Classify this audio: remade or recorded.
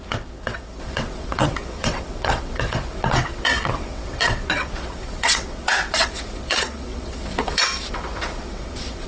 remade